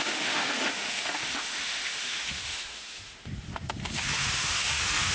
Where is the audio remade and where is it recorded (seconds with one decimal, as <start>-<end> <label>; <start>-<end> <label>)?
0.0-5.1 remade